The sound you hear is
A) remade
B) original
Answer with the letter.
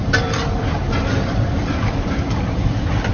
A